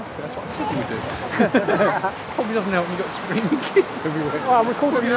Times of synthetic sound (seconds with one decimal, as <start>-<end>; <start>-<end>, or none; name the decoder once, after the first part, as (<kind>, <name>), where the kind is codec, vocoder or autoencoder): 0.5-1.4 (vocoder, BigVGAN v2)